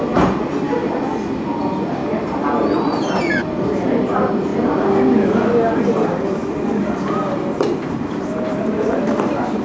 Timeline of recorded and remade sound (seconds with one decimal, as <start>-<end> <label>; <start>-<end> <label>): 0.0-0.8 remade; 0.8-1.4 recorded; 1.4-4.5 remade; 4.5-5.8 recorded; 5.8-9.6 remade